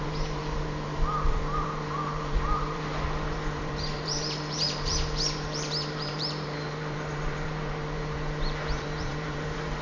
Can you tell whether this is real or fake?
fake